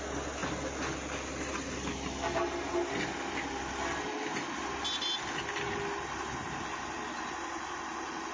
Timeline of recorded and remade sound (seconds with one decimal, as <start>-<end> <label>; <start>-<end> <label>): 0.0-8.3 recorded